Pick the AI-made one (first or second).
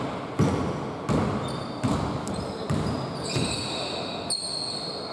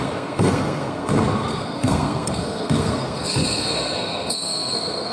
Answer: second